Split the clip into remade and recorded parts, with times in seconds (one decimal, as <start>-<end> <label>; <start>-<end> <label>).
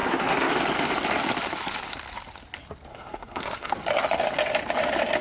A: 0.0-0.5 remade; 0.5-2.9 recorded; 2.9-3.7 remade; 3.7-5.2 recorded